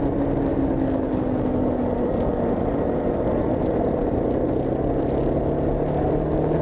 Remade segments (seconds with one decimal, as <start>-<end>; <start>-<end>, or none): 0.5-1.8